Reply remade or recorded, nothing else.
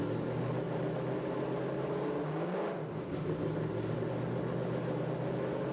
recorded